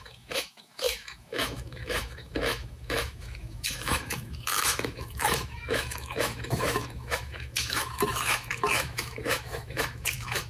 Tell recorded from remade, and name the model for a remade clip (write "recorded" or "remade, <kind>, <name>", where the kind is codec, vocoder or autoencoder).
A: remade, autoencoder, DAC-VAE